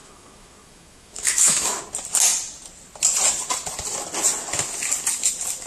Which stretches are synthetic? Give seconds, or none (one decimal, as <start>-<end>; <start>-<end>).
0.0-1.8